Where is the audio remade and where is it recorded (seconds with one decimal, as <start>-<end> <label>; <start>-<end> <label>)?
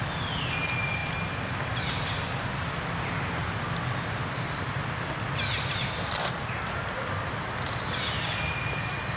0.0-9.2 recorded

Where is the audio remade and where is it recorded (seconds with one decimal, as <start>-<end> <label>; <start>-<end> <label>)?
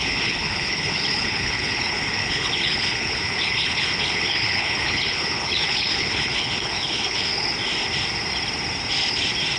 0.0-7.3 remade; 7.3-9.6 recorded